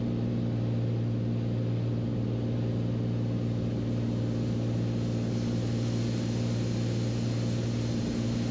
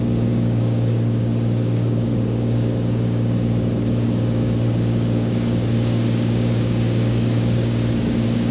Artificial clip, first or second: second